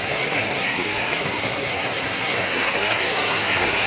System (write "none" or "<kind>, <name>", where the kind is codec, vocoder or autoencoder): codec, SNAC